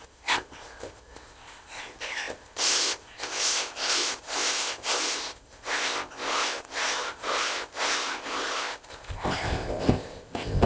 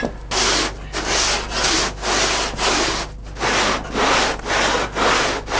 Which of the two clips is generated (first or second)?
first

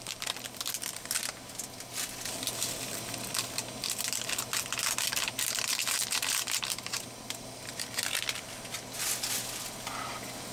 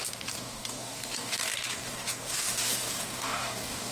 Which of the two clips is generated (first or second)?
second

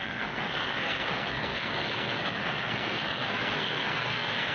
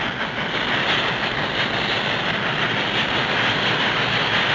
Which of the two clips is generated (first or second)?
first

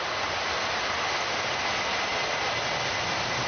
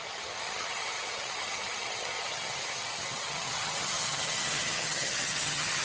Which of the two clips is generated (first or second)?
second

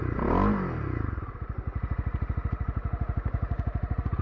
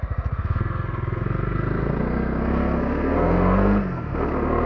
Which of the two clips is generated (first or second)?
second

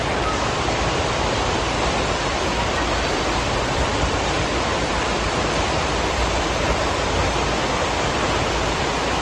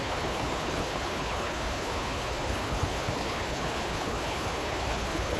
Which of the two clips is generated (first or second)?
second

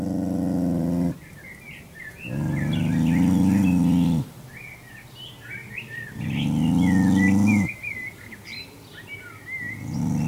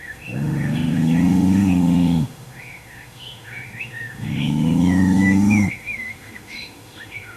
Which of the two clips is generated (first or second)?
second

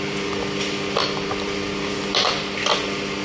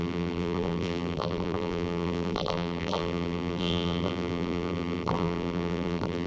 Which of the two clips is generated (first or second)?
second